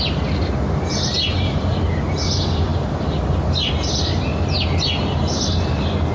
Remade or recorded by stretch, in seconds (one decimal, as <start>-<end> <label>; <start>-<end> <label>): 0.0-6.1 recorded